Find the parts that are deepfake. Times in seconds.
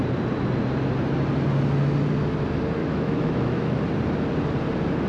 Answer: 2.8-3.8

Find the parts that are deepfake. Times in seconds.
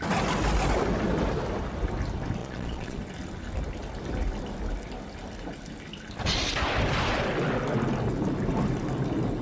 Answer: 2.4-3.0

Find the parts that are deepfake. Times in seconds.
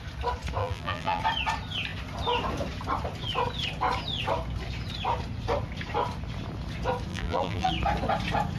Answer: 0.6-1.2; 7.1-7.7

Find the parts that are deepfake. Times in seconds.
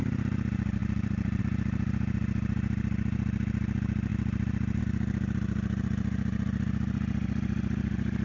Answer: 0.8-1.4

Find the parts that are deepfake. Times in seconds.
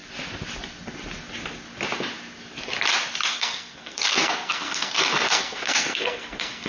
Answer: 3.3-6.7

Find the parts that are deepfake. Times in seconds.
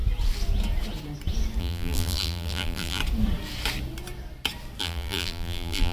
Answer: 1.6-3.0; 4.8-5.9